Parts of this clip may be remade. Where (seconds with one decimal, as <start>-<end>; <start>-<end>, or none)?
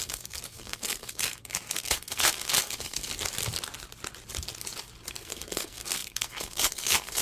0.0-3.0; 5.1-7.2